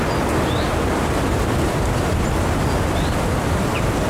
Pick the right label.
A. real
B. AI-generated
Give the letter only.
A